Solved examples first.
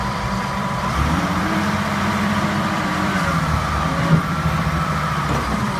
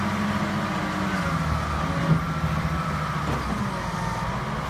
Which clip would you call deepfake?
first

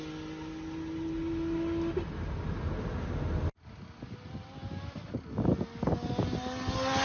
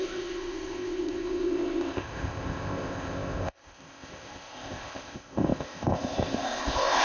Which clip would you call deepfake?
second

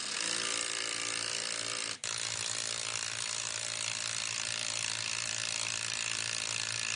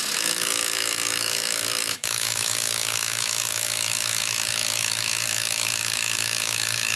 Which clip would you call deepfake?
second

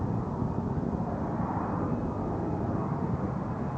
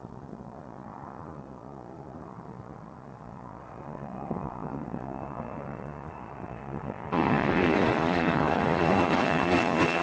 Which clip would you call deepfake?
second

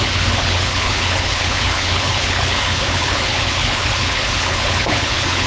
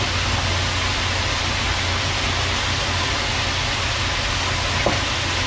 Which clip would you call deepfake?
first